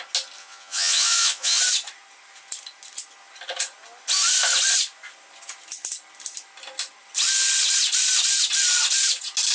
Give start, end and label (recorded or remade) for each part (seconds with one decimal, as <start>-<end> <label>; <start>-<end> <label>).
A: 0.0-0.4 recorded; 0.4-1.6 remade; 1.6-9.5 recorded

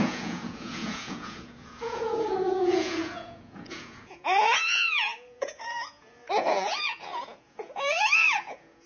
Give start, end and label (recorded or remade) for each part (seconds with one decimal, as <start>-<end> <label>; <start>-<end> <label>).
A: 0.0-8.9 remade

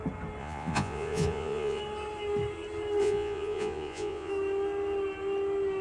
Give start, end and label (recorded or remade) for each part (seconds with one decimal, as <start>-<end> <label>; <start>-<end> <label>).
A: 0.0-0.4 recorded; 0.4-1.8 remade; 1.8-3.0 recorded; 3.0-4.3 remade; 4.3-5.8 recorded